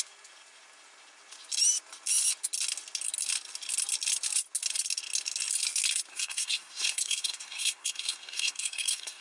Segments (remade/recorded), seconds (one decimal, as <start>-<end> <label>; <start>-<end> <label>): 0.0-6.1 recorded; 6.1-9.2 remade